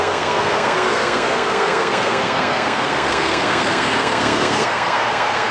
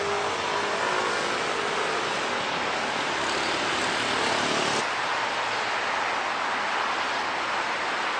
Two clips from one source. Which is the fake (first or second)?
first